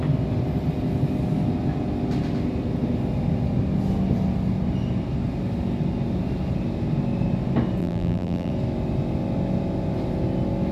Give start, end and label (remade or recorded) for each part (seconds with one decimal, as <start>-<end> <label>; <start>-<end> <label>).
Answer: 0.0-7.8 recorded; 7.8-8.5 remade; 8.5-10.7 recorded